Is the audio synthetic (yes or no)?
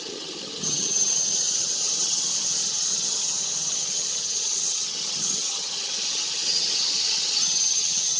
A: yes